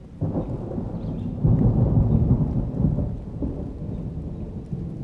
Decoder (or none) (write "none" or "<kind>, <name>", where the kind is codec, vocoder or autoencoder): none